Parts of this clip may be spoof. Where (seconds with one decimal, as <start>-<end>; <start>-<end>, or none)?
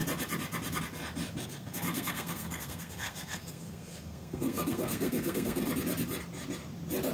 1.4-5.7